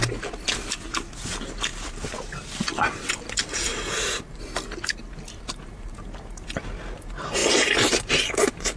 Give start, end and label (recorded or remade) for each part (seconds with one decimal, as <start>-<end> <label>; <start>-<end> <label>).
0.0-8.8 recorded